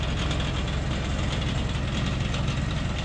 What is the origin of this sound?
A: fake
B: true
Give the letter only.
B